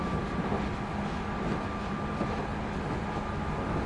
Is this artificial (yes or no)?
no